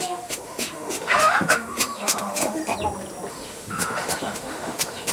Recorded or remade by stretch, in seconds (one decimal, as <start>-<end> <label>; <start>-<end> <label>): 0.0-2.6 remade; 2.6-3.3 recorded; 3.3-5.1 remade